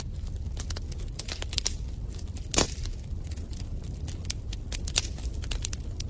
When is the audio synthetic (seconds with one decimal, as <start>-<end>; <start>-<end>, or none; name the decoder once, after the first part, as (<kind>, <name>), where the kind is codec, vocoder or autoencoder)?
none